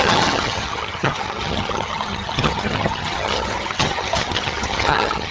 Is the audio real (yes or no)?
no